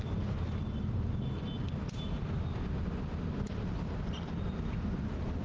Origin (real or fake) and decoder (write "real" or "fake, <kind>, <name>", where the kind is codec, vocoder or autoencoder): real